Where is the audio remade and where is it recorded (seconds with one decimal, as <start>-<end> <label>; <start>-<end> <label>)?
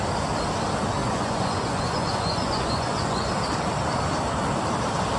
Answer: 0.0-1.0 recorded; 1.0-3.3 remade; 3.3-5.2 recorded